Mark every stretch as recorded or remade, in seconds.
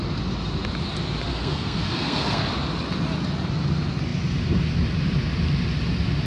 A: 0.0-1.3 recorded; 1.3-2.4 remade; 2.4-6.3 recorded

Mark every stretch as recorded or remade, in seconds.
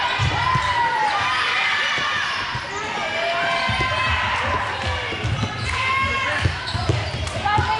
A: 0.0-7.8 recorded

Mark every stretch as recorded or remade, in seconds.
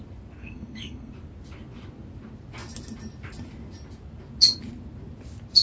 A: 0.0-0.4 recorded; 0.4-1.1 remade; 1.1-5.6 recorded